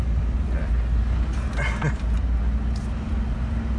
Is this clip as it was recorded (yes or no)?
yes